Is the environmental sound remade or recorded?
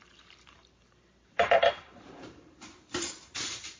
remade